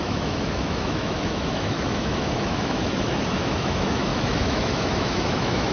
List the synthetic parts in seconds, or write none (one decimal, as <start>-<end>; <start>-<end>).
0.0-5.7